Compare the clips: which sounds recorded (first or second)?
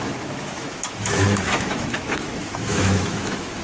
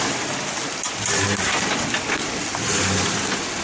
second